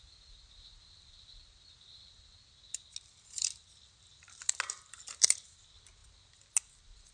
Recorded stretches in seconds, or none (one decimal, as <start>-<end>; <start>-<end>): 0.0-7.1